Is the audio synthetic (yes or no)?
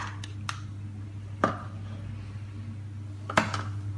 no